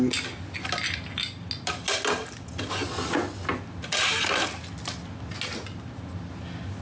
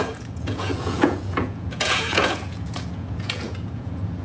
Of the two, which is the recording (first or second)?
first